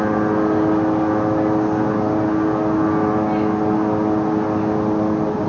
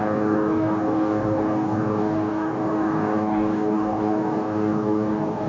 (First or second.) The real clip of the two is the first